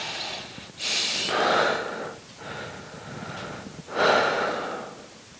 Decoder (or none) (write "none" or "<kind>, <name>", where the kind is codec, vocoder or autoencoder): none